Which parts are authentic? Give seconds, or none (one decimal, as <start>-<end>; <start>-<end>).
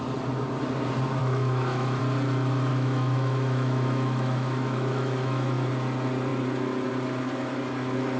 0.0-1.2; 2.0-2.7; 5.7-8.2